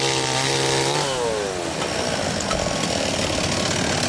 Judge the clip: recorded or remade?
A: recorded